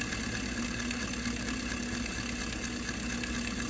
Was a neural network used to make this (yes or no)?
no